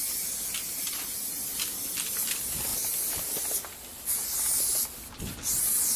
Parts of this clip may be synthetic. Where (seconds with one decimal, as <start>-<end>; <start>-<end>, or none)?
none